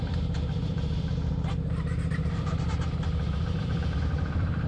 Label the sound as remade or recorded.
remade